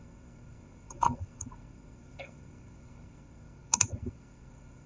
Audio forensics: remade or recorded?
remade